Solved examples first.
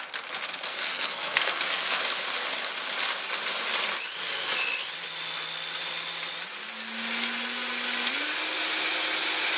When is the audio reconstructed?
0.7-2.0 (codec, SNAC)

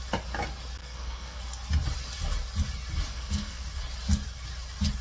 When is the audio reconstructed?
0.8-1.4 (codec, SNAC); 3.1-3.6